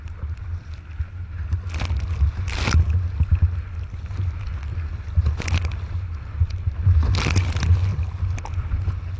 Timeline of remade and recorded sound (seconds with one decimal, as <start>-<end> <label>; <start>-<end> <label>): 0.0-9.2 recorded